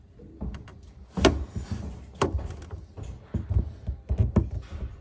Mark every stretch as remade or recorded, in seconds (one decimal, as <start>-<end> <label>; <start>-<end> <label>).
0.0-5.0 recorded